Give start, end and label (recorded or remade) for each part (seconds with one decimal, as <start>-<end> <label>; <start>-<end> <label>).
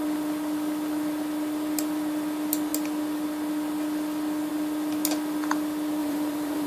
0.0-6.0 recorded; 6.0-6.7 remade